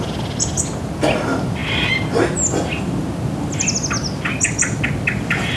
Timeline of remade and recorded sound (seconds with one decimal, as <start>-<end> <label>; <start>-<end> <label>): 0.0-5.6 recorded